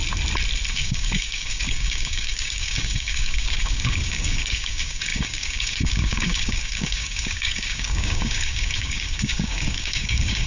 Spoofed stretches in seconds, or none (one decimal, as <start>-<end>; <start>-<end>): 0.7-10.5